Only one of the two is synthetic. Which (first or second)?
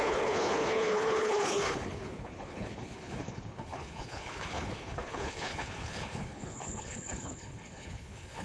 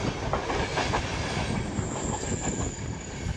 first